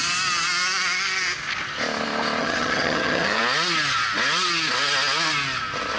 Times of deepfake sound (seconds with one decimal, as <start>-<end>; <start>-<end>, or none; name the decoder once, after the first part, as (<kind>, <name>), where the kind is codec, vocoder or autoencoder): 2.4-3.4 (vocoder, HiFi-GAN)